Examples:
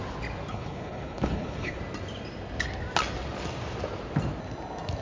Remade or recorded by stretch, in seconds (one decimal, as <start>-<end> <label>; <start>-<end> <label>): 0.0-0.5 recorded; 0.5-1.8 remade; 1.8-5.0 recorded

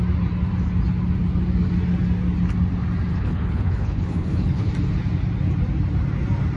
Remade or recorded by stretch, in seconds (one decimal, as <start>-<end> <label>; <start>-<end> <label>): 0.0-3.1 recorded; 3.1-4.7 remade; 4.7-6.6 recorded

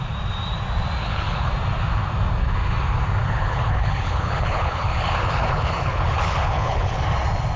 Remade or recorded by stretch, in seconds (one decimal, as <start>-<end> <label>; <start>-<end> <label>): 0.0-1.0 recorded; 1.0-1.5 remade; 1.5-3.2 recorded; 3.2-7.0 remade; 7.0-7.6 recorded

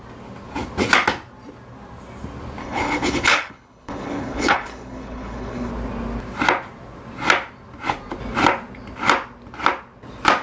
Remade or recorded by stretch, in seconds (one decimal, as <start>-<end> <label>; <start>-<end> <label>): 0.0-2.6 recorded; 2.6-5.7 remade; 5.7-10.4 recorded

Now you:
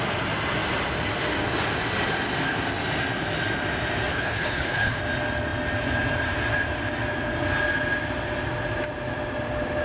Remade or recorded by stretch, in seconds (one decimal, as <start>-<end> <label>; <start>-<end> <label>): 0.0-4.1 recorded; 4.1-5.0 remade; 5.0-9.8 recorded

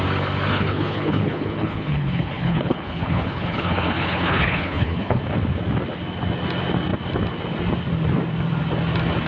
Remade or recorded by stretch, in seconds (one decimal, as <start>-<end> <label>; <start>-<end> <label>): 0.0-0.5 recorded; 0.5-5.2 remade; 5.2-9.3 recorded